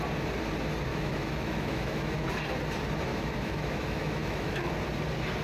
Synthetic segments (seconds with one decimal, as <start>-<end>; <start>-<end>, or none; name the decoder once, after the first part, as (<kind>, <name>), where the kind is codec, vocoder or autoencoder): 0.9-2.3 (autoencoder, DAC-VAE); 3.1-4.7